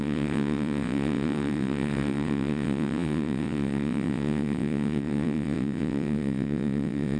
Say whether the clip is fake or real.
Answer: fake